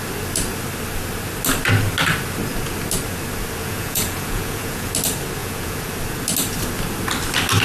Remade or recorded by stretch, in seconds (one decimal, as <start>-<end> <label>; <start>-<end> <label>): 0.0-3.6 recorded; 3.6-4.9 remade; 4.9-5.4 recorded; 5.4-5.9 remade; 5.9-7.6 recorded